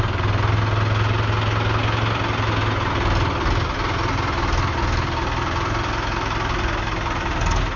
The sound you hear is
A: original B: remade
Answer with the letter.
A